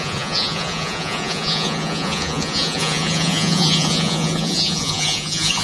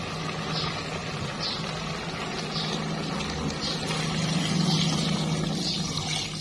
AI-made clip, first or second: first